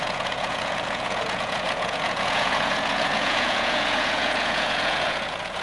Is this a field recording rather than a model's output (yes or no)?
no